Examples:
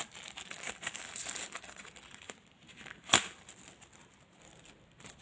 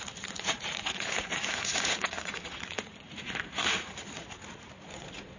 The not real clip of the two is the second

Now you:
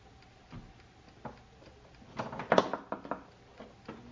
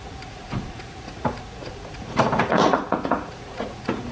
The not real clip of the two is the second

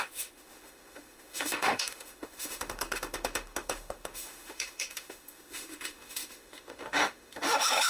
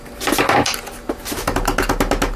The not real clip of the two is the first